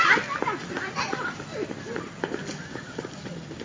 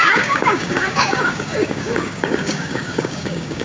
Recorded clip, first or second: first